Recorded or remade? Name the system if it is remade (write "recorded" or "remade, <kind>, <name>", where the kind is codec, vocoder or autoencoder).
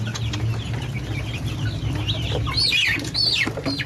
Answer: recorded